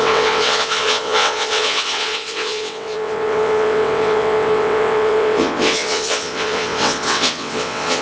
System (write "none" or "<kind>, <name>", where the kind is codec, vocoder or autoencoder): vocoder, WaveNeXt